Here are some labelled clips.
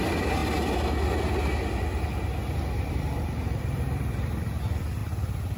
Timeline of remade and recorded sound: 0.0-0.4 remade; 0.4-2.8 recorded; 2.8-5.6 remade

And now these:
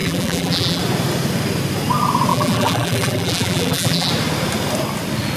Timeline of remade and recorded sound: 0.0-0.8 remade; 0.8-2.3 recorded; 2.3-4.1 remade; 4.1-5.4 recorded

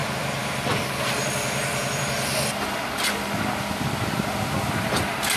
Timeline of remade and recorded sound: 0.0-5.4 recorded

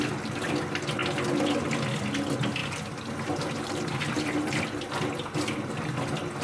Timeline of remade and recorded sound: 0.0-2.6 recorded; 2.6-4.6 remade; 4.6-6.4 recorded